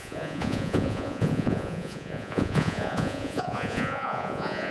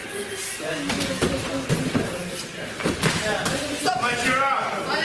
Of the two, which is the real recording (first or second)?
second